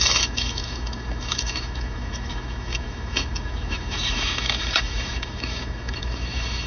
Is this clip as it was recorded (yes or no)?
no